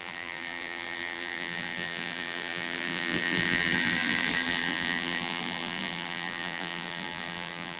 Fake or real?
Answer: fake